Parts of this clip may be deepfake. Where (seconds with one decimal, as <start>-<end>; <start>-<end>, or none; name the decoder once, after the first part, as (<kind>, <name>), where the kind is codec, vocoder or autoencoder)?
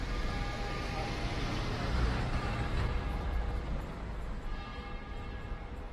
1.3-3.5 (vocoder, BigVGAN v2); 4.7-5.9